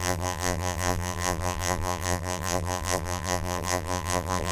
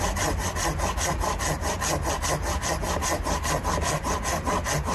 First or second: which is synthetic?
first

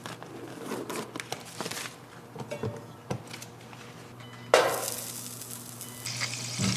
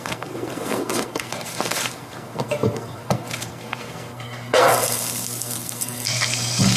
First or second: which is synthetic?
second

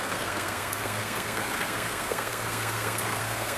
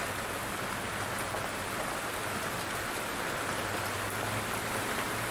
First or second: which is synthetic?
first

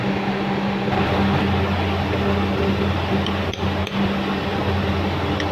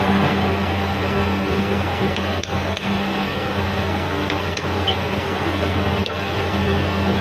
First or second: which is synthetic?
second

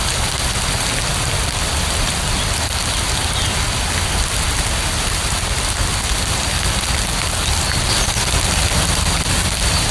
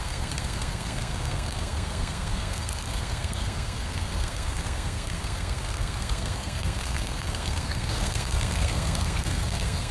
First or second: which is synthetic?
second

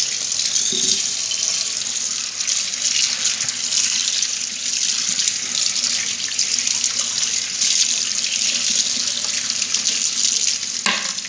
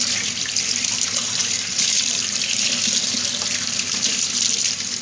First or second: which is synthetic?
second